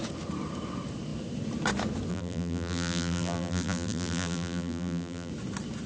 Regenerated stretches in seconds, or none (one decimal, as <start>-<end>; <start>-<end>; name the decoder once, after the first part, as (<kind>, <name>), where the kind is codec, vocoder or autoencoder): 2.1-5.3 (vocoder, BigVGAN v2)